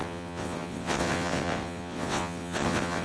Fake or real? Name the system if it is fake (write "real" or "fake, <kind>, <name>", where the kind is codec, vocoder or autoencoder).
fake, vocoder, WaveNeXt